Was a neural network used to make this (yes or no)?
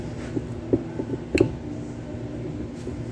no